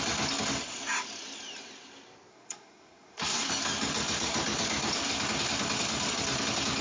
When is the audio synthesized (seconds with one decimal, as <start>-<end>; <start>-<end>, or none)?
2.3-3.5